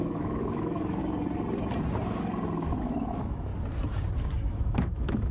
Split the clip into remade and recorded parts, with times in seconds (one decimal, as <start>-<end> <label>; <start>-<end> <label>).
0.0-1.0 remade; 1.0-2.8 recorded; 2.8-3.5 remade; 3.5-4.5 recorded; 4.5-5.3 remade